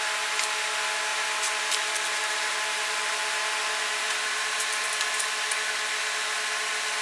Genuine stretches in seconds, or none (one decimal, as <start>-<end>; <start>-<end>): 0.0-1.1; 5.3-7.0